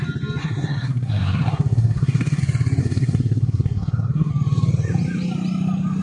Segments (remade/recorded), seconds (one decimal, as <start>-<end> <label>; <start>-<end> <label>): 0.0-0.4 recorded; 0.4-2.4 remade; 2.4-2.8 recorded; 2.8-4.3 remade; 4.3-6.0 recorded

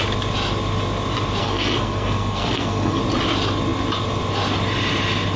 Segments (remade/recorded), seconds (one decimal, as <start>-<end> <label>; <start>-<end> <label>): 0.0-1.4 recorded; 1.4-3.0 remade; 3.0-5.4 recorded